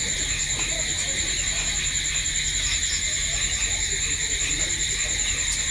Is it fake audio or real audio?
real